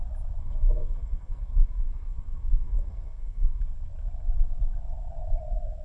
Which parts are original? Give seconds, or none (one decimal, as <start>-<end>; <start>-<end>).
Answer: 0.0-0.4; 3.6-5.8